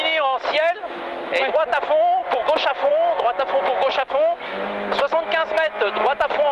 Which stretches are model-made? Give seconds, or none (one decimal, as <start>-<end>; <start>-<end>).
none